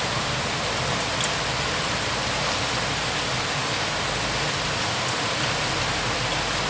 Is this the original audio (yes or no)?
yes